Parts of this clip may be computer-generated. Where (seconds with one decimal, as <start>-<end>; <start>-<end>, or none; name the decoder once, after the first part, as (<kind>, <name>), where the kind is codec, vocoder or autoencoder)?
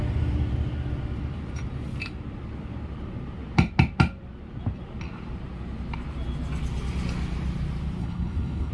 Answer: 8.0-8.7 (codec, HILCodec)